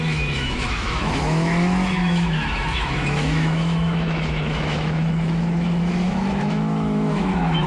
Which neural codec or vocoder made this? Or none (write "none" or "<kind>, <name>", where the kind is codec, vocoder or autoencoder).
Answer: autoencoder, DAC-VAE